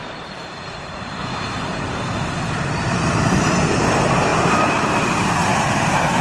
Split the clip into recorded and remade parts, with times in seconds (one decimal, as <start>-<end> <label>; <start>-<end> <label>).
0.0-6.2 remade